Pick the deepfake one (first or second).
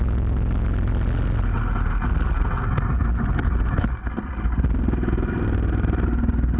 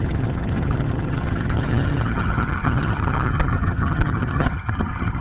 second